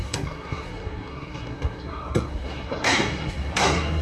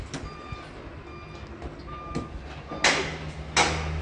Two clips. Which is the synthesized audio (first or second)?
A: first